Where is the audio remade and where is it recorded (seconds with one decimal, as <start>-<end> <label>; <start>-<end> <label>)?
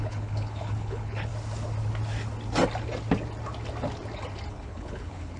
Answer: 0.0-1.3 remade; 1.3-4.5 recorded; 4.5-5.4 remade